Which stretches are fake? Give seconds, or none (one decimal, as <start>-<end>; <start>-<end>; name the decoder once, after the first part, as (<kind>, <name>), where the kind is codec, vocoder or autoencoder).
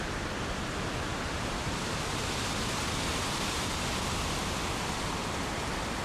none